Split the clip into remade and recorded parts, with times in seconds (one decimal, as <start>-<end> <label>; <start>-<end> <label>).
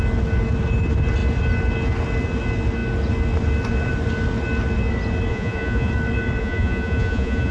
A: 0.0-5.3 recorded; 5.3-5.9 remade; 5.9-6.4 recorded; 6.4-7.5 remade